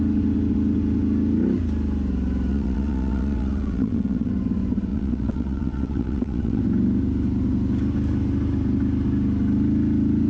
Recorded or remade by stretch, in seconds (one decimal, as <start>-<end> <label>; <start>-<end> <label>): 0.0-2.5 recorded; 2.5-4.3 remade; 4.3-4.9 recorded; 4.9-6.6 remade; 6.6-10.3 recorded